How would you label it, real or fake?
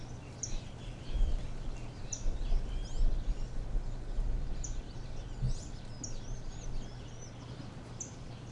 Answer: real